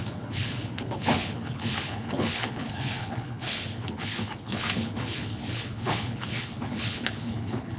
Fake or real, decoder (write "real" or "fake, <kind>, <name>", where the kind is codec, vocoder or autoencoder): fake, codec, HILCodec